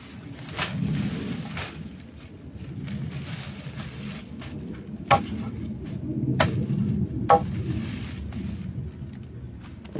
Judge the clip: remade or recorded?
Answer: recorded